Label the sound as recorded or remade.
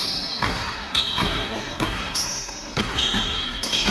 remade